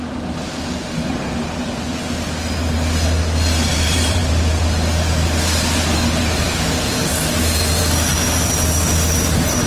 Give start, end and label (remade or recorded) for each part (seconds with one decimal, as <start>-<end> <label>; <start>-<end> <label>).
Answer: 0.0-3.7 recorded; 3.7-4.6 remade; 4.6-9.7 recorded